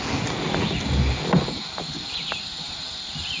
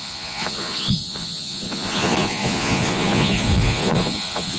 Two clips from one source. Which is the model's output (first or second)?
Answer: second